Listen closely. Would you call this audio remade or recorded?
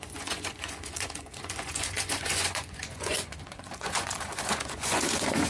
remade